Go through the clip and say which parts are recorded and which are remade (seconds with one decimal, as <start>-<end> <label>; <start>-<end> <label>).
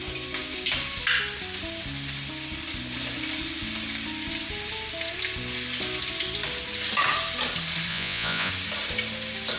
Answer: 0.0-7.9 recorded; 7.9-8.5 remade; 8.5-9.6 recorded